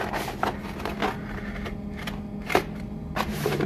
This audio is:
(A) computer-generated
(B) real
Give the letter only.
B